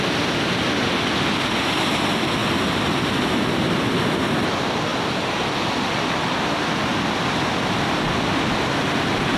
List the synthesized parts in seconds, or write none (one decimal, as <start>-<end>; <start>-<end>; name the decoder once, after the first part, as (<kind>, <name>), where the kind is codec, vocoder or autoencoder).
none